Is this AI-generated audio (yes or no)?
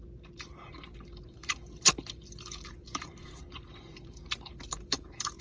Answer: yes